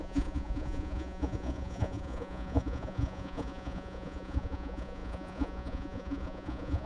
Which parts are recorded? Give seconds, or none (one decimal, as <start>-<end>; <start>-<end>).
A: none

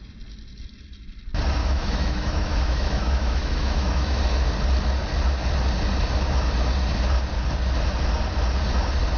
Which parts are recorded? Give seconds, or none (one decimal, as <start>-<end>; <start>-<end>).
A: 0.0-1.6; 4.2-9.2

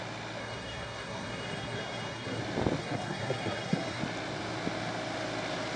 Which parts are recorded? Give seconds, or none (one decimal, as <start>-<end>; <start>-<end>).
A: 0.0-0.4; 2.4-2.8; 4.0-5.8

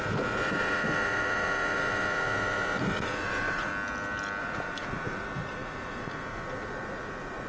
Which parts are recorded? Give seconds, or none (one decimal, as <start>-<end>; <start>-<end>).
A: 3.7-4.4

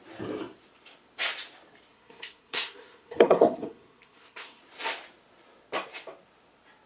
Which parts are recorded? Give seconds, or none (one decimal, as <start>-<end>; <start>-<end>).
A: 0.0-1.9; 4.6-6.9

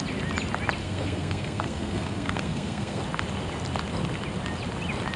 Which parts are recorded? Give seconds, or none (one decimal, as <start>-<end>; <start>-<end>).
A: 0.0-0.8; 3.0-5.2

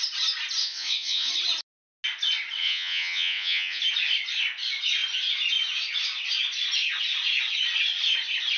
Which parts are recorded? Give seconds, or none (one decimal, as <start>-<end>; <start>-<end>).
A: 0.0-0.6; 1.3-2.6; 3.8-8.6

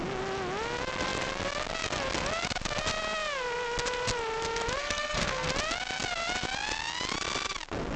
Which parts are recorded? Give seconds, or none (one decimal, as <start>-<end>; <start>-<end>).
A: 0.0-4.8; 5.5-8.0